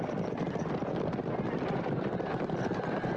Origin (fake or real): real